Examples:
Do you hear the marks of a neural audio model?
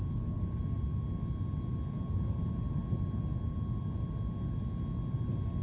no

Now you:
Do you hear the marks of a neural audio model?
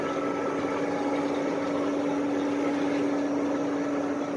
no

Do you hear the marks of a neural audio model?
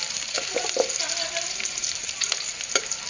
yes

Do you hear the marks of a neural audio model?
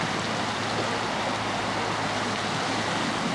no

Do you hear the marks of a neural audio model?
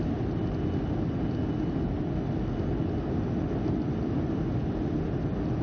no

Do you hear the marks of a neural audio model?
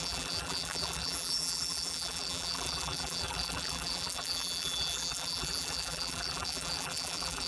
yes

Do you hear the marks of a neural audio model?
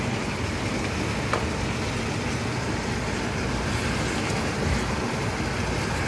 no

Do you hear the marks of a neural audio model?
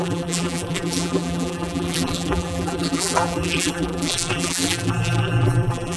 yes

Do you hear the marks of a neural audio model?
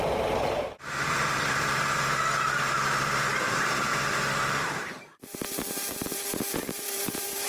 yes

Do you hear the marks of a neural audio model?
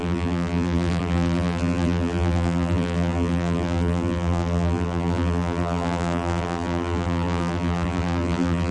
yes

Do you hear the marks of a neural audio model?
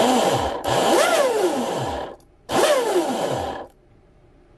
yes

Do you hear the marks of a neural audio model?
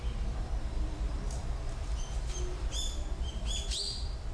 yes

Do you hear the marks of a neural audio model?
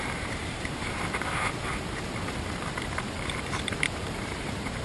yes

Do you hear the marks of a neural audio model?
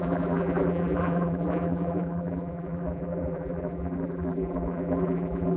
yes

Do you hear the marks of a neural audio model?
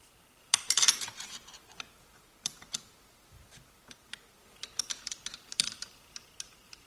yes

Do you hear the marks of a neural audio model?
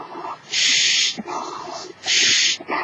no